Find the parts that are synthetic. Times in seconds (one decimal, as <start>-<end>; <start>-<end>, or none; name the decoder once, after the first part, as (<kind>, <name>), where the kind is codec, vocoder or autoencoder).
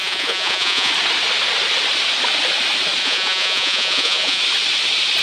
0.0-0.9 (vocoder, Vocos); 3.0-4.4